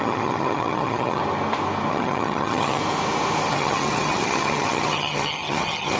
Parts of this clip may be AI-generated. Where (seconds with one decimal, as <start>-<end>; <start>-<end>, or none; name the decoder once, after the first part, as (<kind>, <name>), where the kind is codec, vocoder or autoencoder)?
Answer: 0.0-1.2 (vocoder, HiFi-GAN); 1.9-2.8; 3.5-6.0